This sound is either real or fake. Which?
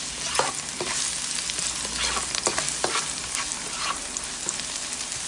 real